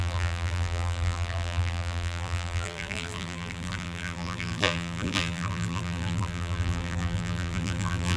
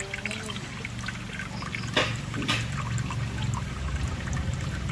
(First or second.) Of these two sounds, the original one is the second